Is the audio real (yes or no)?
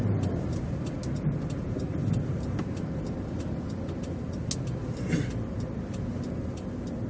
yes